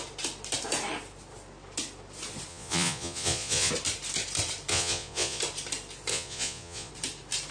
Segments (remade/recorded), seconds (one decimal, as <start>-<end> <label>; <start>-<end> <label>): 0.0-2.5 recorded; 2.5-3.7 remade; 3.7-4.7 recorded; 4.7-5.4 remade; 5.4-6.1 recorded; 6.1-6.9 remade; 6.9-7.5 recorded